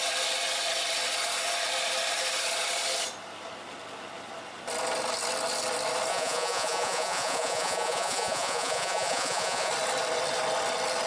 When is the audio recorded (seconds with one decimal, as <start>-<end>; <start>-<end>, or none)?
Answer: 0.0-6.1; 9.7-11.1